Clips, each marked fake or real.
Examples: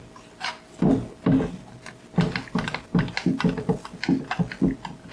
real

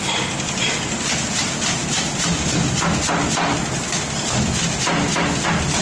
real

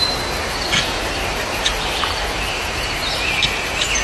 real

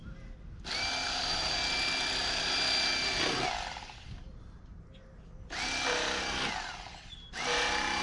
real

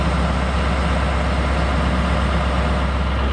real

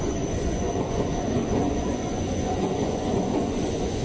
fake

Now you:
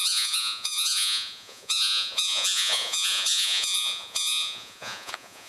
fake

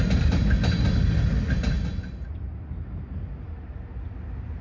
real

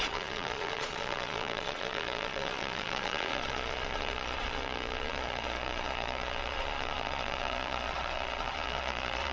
fake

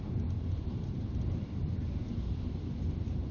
real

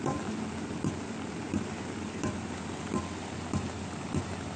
real